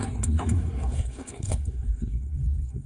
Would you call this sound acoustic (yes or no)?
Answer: no